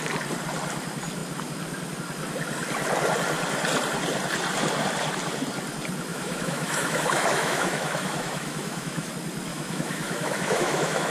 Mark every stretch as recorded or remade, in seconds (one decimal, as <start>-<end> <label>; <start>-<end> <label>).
0.0-6.1 recorded; 6.1-9.1 remade; 9.1-9.5 recorded; 9.5-11.1 remade

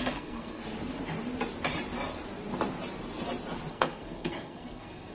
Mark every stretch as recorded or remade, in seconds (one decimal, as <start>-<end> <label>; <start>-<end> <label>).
0.0-0.6 remade; 0.6-3.7 recorded; 3.7-5.1 remade

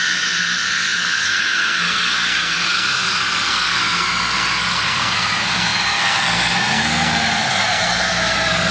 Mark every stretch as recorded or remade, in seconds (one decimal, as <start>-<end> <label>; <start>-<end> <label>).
0.0-8.7 remade

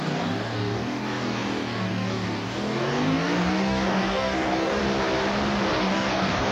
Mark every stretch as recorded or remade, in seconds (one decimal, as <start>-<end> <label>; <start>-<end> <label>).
0.0-4.8 remade; 4.8-5.8 recorded; 5.8-6.5 remade

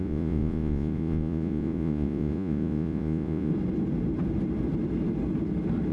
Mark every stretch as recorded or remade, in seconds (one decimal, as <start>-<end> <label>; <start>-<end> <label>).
0.0-3.5 remade; 3.5-5.9 recorded

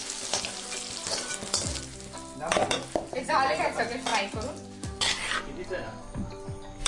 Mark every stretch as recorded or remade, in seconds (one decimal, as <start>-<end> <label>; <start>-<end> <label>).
0.0-6.9 recorded

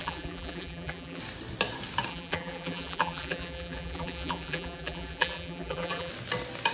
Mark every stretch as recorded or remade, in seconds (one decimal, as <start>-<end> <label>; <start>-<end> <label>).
0.0-1.2 remade; 1.2-2.1 recorded; 2.1-6.1 remade; 6.1-6.7 recorded

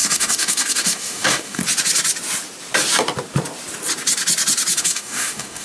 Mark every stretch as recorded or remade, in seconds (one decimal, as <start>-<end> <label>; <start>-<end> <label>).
0.0-1.6 remade; 1.6-4.8 recorded; 4.8-5.6 remade